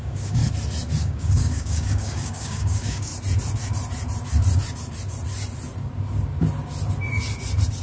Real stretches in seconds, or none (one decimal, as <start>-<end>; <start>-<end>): 0.4-1.0; 3.1-7.8